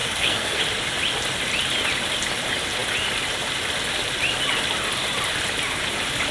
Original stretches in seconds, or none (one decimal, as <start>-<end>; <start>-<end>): 0.6-6.3